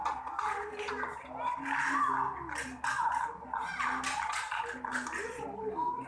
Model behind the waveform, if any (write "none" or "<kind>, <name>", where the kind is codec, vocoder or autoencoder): none